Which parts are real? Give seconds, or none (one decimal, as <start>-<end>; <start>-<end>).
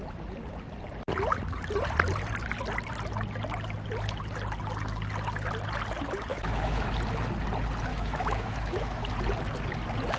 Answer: 0.0-6.3; 6.9-7.9; 9.0-10.2